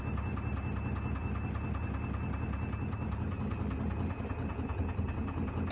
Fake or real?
real